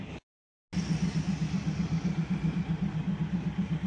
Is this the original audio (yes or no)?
yes